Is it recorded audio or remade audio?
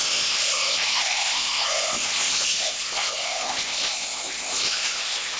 remade